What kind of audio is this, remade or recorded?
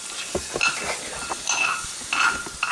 recorded